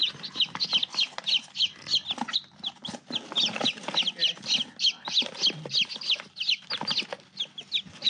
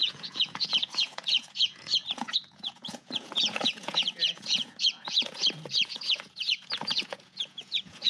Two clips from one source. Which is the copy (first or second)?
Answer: second